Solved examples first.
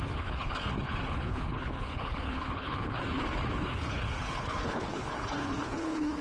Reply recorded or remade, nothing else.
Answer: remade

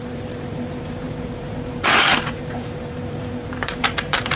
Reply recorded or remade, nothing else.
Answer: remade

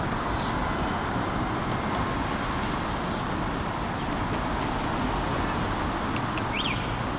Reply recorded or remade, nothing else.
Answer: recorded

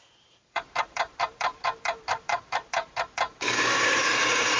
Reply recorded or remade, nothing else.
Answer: remade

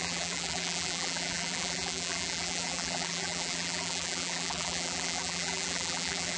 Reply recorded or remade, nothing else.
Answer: remade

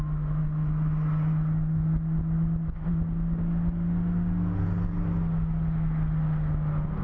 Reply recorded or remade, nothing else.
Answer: recorded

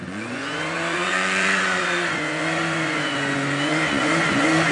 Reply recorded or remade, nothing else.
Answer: remade